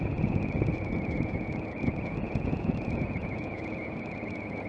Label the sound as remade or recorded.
remade